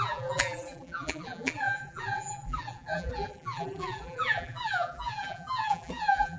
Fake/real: fake